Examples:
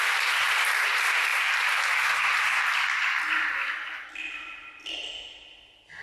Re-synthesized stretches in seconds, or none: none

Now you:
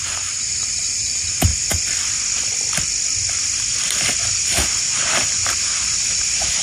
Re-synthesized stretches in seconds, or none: 0.0-1.5 (vocoder, BigVGAN v2); 3.8-6.6